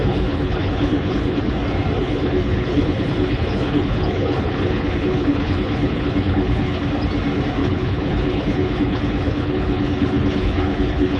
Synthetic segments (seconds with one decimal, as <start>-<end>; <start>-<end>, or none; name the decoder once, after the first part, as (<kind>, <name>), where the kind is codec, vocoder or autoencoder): 0.0-1.5 (codec, HILCodec); 2.0-6.8; 7.6-11.2